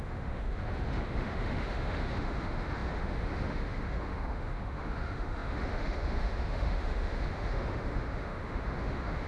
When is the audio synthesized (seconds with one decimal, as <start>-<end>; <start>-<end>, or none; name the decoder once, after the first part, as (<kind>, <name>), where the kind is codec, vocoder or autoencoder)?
0.0-9.3 (autoencoder, DAC-VAE)